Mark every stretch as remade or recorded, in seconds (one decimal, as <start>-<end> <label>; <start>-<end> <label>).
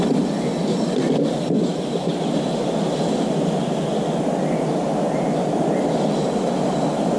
0.0-7.2 recorded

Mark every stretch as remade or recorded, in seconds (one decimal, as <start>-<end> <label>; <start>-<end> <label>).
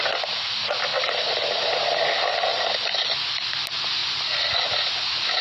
0.0-0.9 recorded; 0.9-1.5 remade; 1.5-2.5 recorded; 2.5-3.5 remade; 3.5-4.0 recorded; 4.0-4.7 remade; 4.7-5.4 recorded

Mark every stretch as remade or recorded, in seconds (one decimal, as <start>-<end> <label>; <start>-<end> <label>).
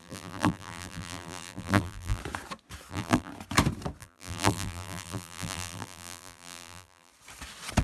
0.0-2.2 remade; 2.2-2.9 recorded; 2.9-3.3 remade; 3.3-4.0 recorded; 4.0-7.1 remade; 7.1-7.8 recorded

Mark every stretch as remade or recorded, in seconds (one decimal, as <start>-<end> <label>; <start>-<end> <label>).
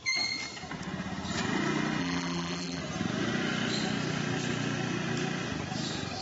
0.0-2.0 recorded; 2.0-2.8 remade; 2.8-6.2 recorded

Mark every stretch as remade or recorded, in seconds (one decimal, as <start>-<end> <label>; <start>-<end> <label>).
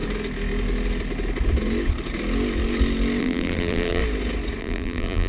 0.0-3.2 recorded; 3.2-4.0 remade; 4.0-4.6 recorded; 4.6-5.3 remade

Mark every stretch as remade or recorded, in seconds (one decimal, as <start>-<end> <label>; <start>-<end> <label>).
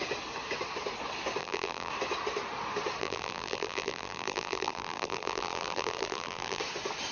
0.0-1.4 recorded; 1.4-1.9 remade; 1.9-3.0 recorded; 3.0-6.6 remade; 6.6-7.1 recorded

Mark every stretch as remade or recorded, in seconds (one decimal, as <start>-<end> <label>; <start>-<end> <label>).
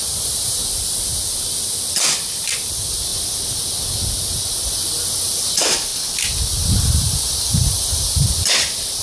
0.0-0.6 remade; 0.6-2.2 recorded; 2.2-3.1 remade; 3.1-5.5 recorded; 5.5-5.9 remade; 5.9-6.8 recorded; 6.8-9.0 remade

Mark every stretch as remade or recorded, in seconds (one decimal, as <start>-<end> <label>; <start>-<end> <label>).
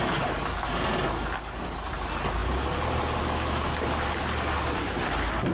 0.0-5.5 recorded